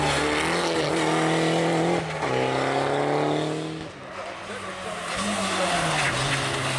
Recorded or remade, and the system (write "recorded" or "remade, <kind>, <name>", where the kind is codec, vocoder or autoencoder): recorded